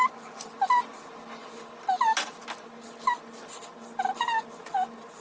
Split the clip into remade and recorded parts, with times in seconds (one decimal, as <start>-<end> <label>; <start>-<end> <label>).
0.0-5.2 recorded

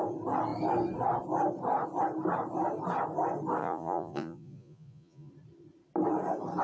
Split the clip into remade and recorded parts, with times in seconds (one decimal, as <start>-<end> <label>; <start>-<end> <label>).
0.0-3.6 recorded; 3.6-5.3 remade; 5.3-6.6 recorded

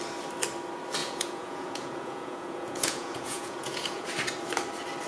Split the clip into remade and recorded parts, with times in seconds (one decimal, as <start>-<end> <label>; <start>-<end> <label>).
0.0-1.0 recorded; 1.0-4.1 remade; 4.1-5.1 recorded

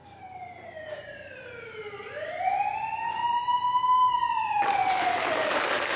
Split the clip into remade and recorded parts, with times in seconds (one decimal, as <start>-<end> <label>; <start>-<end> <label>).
0.0-1.4 remade; 1.4-6.0 recorded